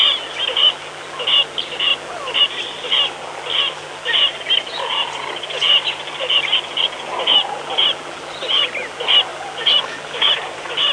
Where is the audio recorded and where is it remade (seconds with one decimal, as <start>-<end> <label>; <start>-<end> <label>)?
0.0-10.9 recorded